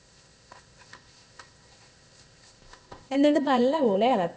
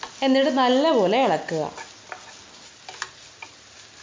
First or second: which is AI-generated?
first